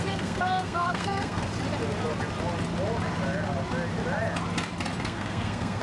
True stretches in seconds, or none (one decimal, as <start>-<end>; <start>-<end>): 1.5-5.0